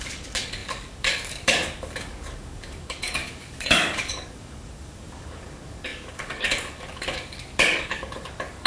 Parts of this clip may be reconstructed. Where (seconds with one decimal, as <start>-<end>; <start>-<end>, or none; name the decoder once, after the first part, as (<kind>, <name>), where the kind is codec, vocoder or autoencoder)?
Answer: 0.0-8.7 (codec, DAC)